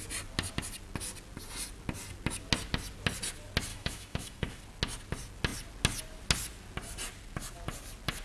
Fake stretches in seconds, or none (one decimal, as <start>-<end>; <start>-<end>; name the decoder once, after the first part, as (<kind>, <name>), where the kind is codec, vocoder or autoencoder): 3.7-4.6 (autoencoder, DAC-VAE)